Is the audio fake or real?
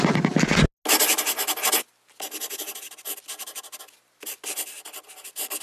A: real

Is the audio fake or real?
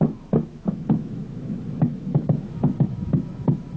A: fake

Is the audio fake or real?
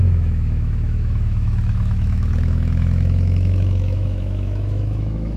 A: fake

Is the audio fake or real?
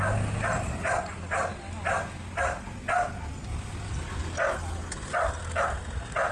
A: real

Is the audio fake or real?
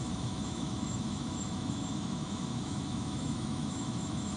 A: fake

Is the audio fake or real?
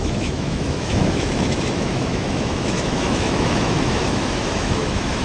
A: fake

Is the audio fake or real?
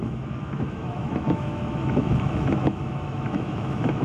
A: fake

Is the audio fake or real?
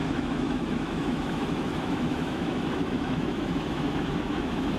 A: fake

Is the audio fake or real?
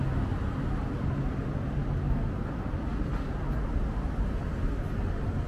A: real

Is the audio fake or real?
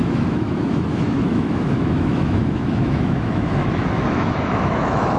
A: fake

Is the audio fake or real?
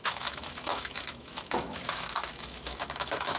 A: fake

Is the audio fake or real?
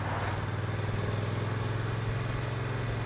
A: real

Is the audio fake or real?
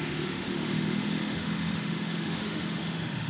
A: fake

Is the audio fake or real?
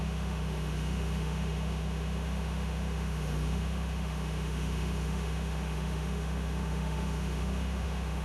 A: fake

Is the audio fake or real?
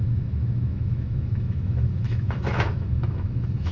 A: fake